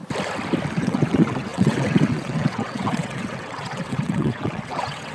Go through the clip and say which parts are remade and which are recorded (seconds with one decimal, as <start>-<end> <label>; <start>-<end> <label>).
0.0-0.8 recorded; 0.8-5.1 remade